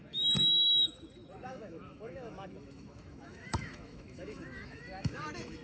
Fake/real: fake